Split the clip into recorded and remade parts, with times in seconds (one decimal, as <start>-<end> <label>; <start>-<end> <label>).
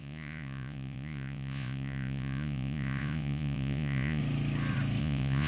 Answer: 0.0-4.2 remade; 4.2-5.0 recorded; 5.0-5.5 remade